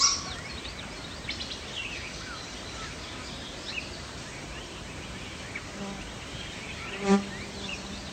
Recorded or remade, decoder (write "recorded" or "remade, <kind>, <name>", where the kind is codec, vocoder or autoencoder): recorded